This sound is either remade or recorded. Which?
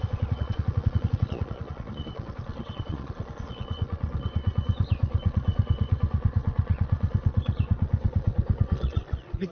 remade